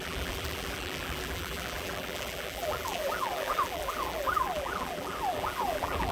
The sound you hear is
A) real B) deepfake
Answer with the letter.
B